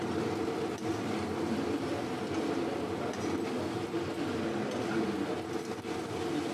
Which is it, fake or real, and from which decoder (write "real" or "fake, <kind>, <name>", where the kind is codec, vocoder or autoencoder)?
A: real